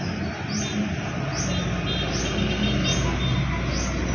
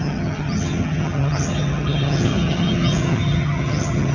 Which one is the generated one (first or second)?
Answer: second